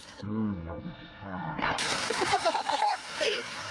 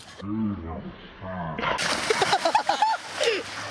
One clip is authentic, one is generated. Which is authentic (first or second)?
second